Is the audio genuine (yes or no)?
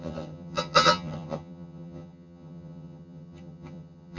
no